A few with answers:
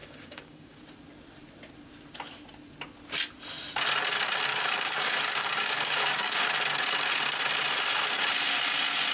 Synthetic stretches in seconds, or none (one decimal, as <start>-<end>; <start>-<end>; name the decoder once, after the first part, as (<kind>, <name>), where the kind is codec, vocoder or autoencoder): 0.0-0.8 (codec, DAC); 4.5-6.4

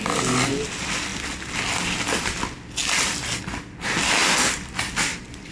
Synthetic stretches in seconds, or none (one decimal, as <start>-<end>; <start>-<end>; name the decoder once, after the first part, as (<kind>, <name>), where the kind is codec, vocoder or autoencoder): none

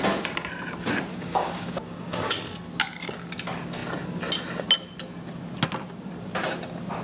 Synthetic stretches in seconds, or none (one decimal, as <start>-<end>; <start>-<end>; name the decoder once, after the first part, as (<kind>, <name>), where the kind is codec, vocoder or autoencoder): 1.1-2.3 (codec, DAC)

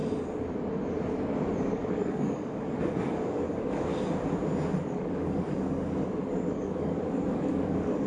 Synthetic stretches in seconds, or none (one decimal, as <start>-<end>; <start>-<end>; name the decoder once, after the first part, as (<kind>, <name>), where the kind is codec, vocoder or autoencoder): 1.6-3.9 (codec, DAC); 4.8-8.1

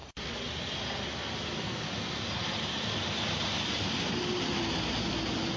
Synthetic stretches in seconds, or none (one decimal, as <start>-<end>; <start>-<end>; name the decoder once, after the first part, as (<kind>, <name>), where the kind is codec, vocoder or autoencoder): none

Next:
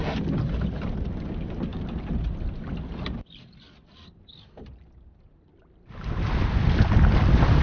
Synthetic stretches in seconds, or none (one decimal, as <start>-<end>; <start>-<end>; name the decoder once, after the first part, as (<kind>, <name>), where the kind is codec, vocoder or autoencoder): none